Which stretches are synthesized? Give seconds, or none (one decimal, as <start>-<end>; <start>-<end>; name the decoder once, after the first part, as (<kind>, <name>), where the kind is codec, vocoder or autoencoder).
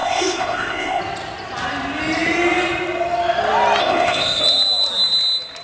0.0-1.0 (codec, ZipCodec); 3.8-4.4